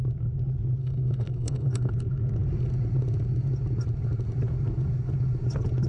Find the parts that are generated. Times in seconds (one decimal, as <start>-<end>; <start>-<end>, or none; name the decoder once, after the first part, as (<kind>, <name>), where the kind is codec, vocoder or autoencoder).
0.8-1.9 (codec, SNAC)